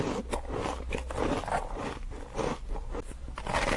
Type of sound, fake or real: real